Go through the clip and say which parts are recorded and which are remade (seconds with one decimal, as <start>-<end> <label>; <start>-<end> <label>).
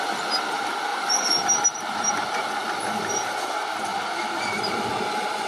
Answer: 0.0-0.9 recorded; 0.9-3.5 remade; 3.5-3.9 recorded; 3.9-5.5 remade